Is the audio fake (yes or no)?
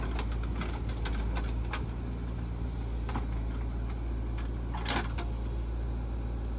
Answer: no